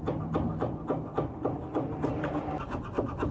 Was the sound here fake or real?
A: fake